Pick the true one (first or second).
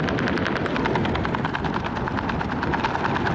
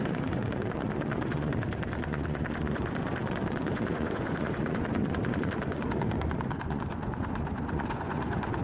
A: first